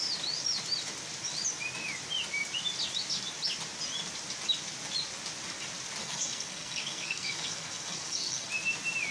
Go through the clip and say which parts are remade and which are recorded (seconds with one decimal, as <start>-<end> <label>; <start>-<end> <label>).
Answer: 0.0-6.0 recorded; 6.0-8.5 remade; 8.5-9.1 recorded